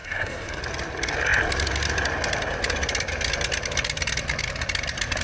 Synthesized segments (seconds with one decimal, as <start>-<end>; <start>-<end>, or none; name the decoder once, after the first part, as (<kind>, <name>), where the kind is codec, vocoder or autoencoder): 0.0-0.6 (codec, SNAC)